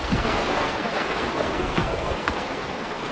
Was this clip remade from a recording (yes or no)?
yes